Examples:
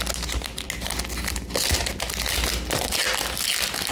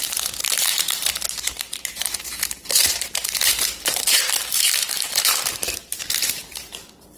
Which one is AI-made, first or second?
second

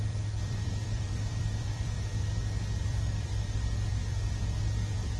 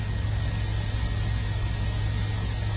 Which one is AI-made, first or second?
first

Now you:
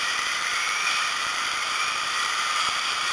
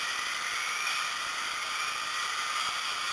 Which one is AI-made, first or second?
first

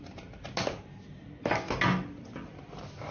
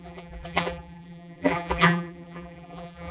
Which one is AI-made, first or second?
second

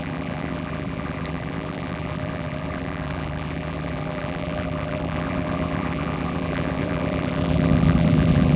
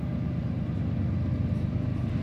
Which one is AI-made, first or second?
first